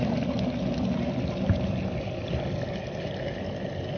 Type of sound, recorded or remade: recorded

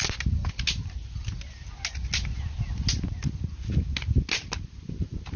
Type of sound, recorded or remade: recorded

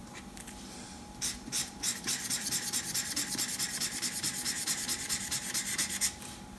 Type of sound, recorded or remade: remade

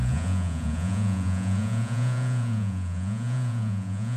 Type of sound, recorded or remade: remade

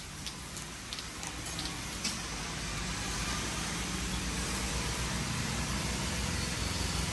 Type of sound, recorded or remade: recorded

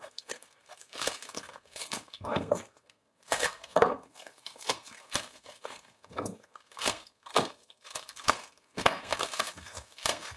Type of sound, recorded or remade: remade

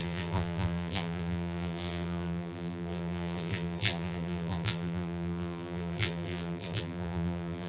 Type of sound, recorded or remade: remade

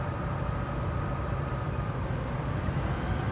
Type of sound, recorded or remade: remade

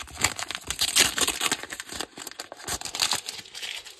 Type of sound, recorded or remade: recorded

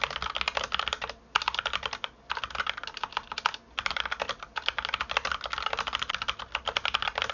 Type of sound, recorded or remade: recorded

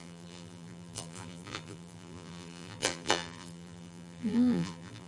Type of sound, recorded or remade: remade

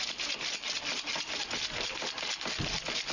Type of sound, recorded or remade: recorded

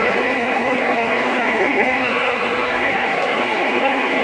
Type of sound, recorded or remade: remade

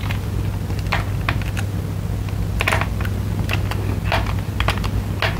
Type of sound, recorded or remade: recorded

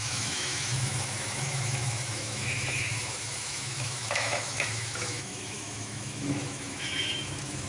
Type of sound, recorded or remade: remade